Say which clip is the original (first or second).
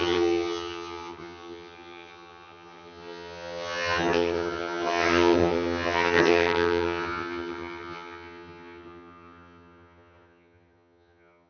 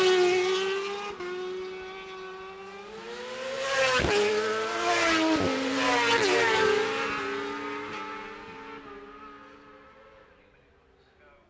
second